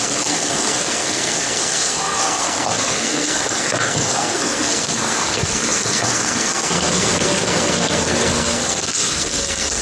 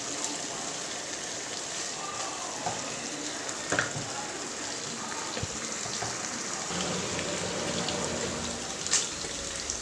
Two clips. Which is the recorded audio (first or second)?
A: second